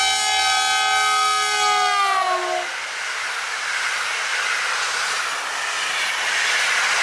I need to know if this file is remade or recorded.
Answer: recorded